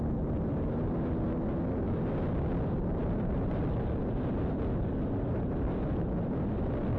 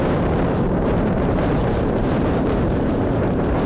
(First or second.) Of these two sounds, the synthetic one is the second